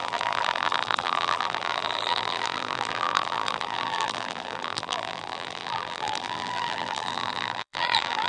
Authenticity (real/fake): fake